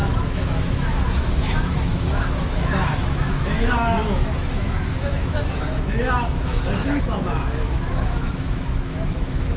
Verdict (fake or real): fake